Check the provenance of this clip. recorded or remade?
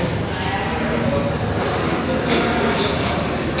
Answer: recorded